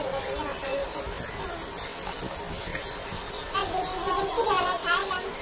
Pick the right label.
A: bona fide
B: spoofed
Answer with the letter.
A